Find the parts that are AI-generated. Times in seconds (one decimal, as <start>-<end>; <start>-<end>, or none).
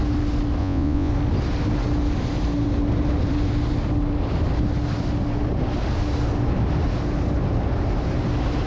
0.6-1.1